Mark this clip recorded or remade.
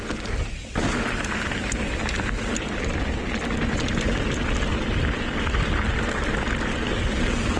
recorded